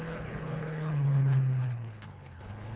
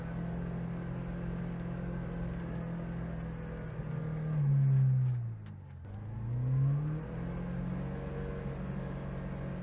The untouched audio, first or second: second